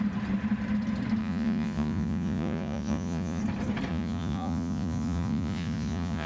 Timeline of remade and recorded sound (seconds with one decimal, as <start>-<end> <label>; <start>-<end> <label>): 0.0-1.2 recorded; 1.2-3.4 remade; 3.4-3.9 recorded; 3.9-6.3 remade